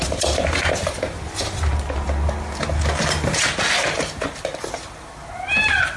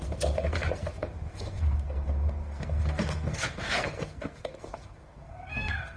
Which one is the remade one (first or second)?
second